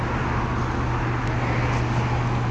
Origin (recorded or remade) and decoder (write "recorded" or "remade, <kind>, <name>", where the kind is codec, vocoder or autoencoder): recorded